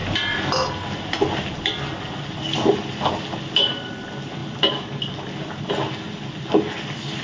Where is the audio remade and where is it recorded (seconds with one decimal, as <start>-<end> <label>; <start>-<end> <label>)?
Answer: 0.0-7.2 recorded